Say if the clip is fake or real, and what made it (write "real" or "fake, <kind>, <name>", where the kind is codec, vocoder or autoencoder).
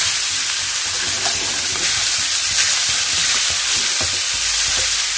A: real